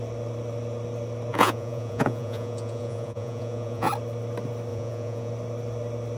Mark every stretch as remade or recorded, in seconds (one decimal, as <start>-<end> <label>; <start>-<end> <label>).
0.0-1.3 recorded; 1.3-3.9 remade; 3.9-4.7 recorded; 4.7-5.3 remade; 5.3-6.2 recorded